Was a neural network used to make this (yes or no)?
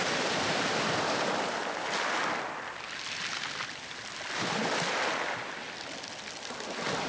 no